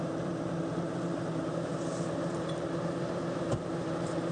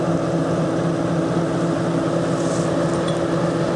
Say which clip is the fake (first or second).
first